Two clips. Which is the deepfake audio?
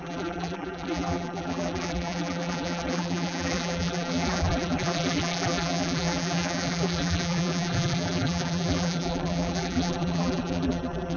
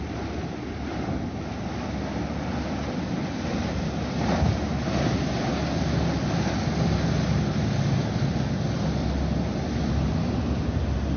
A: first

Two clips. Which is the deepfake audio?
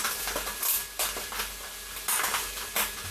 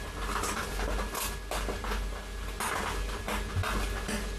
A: first